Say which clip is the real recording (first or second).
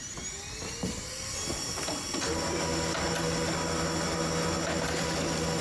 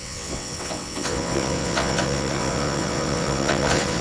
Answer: first